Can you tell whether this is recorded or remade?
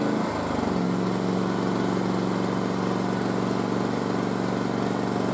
recorded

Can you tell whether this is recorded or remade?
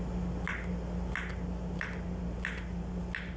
recorded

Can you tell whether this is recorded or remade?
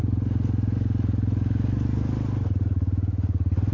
recorded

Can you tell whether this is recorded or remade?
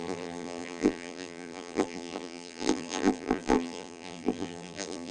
remade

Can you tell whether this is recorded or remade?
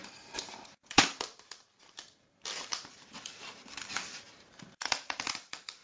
remade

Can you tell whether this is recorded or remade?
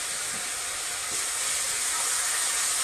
recorded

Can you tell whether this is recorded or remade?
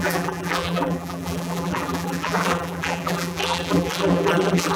remade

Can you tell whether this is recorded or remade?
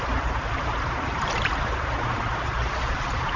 remade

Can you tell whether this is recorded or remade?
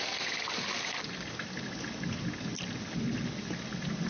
recorded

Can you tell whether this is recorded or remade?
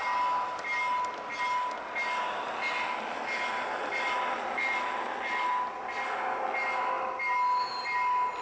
recorded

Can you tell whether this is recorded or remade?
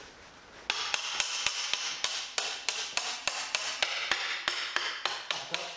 recorded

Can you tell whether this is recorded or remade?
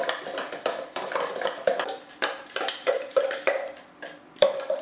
remade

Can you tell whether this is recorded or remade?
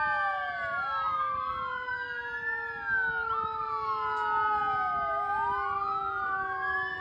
recorded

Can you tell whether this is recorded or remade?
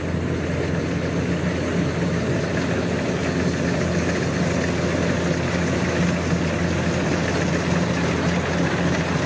recorded